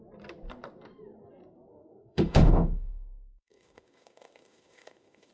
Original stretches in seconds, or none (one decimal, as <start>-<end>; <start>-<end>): 0.0-1.7